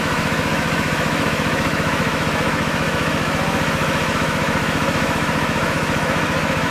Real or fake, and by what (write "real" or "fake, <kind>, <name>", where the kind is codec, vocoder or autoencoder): fake, autoencoder, DAC-VAE